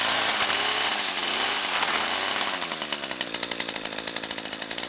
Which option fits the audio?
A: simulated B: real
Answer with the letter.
B